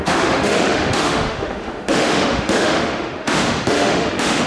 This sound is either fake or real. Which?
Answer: fake